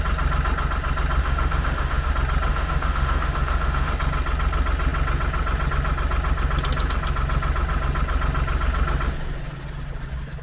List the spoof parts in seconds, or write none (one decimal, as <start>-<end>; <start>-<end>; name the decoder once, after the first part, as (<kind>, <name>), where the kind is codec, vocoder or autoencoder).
1.2-2.1 (autoencoder, DAC-VAE); 2.5-3.9